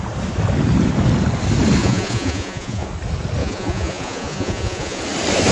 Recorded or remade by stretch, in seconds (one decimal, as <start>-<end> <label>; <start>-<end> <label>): 0.0-1.8 recorded; 1.8-2.9 remade; 2.9-3.4 recorded; 3.4-5.0 remade; 5.0-5.5 recorded